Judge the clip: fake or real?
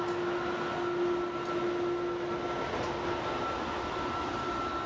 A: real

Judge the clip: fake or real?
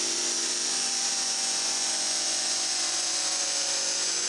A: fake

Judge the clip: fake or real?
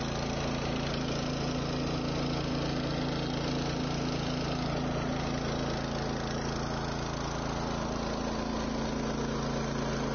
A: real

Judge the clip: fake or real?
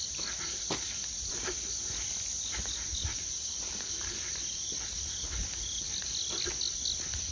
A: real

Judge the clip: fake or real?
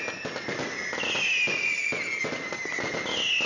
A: real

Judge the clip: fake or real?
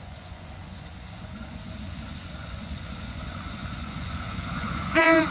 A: fake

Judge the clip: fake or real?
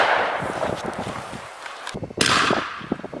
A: real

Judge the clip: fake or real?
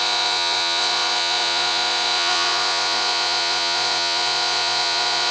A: fake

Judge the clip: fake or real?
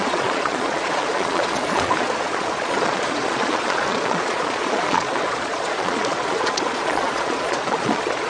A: fake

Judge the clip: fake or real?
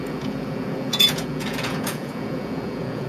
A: fake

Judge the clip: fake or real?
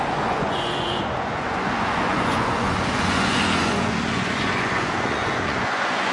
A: fake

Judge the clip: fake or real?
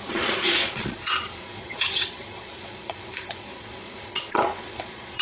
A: fake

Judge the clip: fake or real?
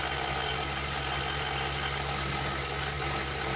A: real